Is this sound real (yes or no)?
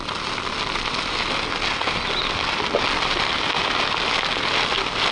yes